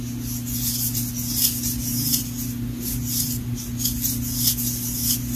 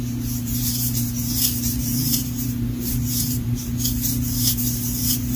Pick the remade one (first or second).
second